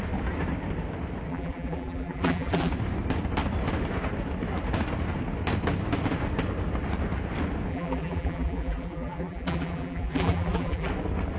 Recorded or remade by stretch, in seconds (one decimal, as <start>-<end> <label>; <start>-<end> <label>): 0.0-1.3 recorded; 1.3-2.7 remade; 2.7-7.7 recorded; 7.7-10.9 remade; 10.9-11.4 recorded